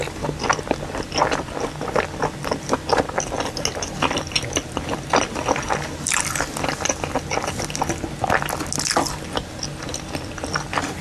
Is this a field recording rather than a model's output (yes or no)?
yes